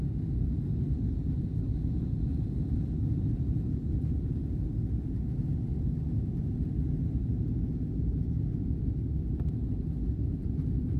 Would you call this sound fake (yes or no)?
no